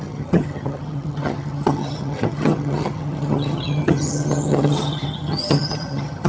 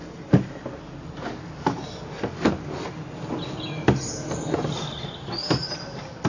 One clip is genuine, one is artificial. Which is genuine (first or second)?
second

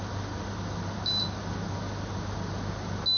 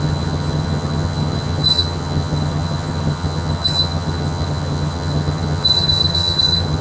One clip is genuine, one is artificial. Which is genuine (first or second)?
first